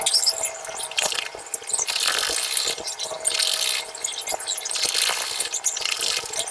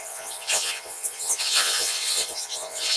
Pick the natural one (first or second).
first